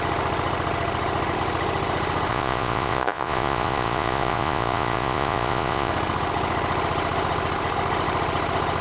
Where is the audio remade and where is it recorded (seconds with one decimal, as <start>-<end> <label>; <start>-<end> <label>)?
0.0-2.3 recorded; 2.3-5.9 remade; 5.9-8.8 recorded